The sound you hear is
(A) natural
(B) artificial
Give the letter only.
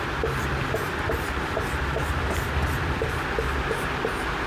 B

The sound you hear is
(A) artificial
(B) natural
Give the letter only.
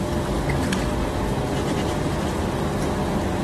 B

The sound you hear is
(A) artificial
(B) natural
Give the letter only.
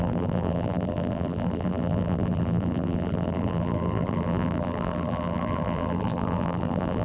A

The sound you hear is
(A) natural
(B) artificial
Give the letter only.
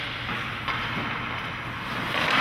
B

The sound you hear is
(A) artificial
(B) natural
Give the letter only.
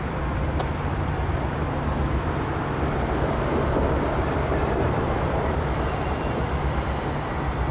A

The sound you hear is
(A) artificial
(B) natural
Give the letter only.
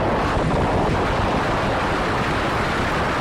B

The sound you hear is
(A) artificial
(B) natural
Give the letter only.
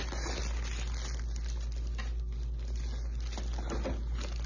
B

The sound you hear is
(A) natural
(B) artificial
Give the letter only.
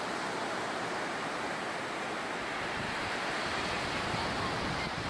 B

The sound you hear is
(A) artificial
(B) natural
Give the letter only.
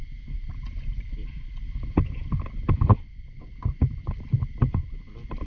A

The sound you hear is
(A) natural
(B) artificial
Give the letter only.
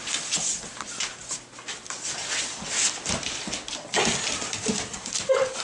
A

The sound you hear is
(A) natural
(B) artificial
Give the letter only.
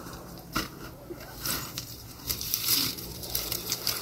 B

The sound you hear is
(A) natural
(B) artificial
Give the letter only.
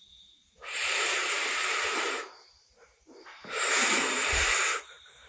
B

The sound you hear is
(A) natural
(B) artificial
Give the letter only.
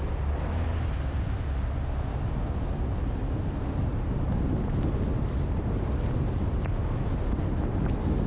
A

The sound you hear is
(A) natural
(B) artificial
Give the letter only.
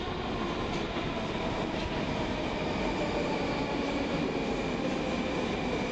A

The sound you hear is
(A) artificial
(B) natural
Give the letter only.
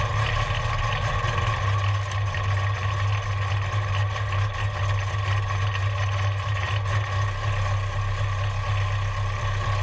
B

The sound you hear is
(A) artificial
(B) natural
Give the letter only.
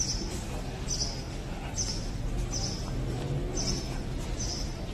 B